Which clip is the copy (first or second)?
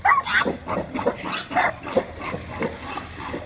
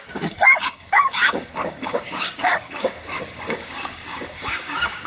second